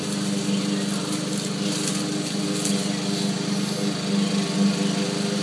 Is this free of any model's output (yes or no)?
yes